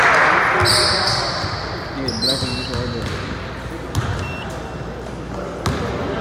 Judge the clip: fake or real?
real